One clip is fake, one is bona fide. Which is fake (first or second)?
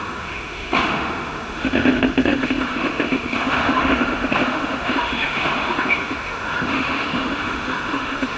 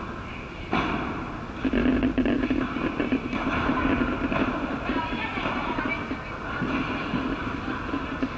first